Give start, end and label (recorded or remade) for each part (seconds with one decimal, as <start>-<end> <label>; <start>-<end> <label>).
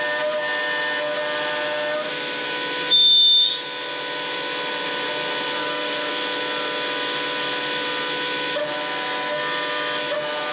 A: 0.0-5.6 recorded; 5.6-6.1 remade; 6.1-10.5 recorded